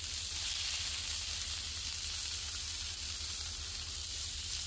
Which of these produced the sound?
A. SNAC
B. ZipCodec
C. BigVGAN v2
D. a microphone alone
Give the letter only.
D